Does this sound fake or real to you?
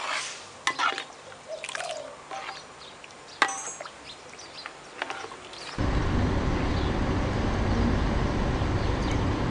real